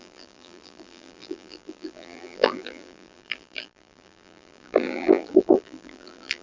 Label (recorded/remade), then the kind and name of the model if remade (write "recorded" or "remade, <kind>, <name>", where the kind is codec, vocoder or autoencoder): remade, vocoder, BigVGAN v2